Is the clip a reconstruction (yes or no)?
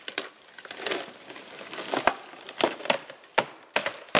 yes